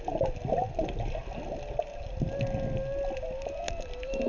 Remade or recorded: recorded